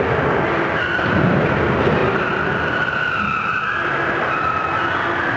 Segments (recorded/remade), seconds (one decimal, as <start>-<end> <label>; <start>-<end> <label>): 0.0-5.4 recorded